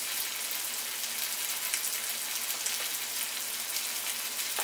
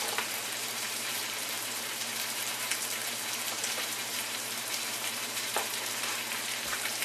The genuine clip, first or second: first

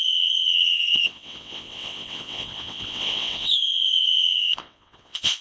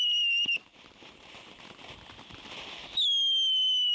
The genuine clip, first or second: second